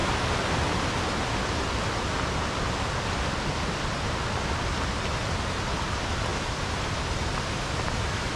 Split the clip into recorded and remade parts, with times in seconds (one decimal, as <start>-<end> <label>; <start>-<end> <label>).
0.0-8.4 recorded